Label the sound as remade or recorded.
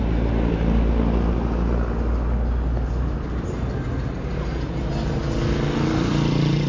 recorded